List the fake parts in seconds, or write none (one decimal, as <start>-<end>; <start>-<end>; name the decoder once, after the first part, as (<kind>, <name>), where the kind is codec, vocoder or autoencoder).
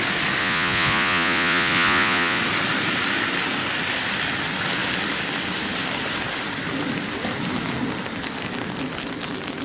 0.4-2.4 (vocoder, Vocos)